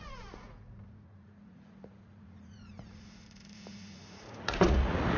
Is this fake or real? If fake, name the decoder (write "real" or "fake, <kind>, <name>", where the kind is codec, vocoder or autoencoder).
fake, vocoder, Vocos